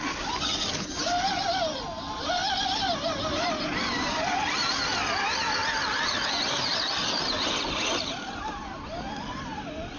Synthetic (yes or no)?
no